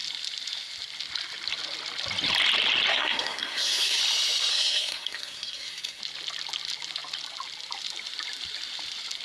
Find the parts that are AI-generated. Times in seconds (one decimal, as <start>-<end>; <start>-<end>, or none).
2.9-4.0; 4.5-6.0